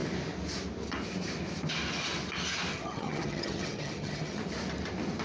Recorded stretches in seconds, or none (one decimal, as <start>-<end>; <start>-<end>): 0.0-2.7; 4.4-5.2